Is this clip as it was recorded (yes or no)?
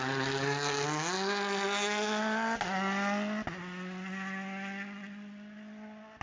yes